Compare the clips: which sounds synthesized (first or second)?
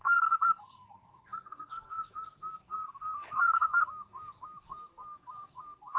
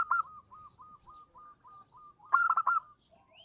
first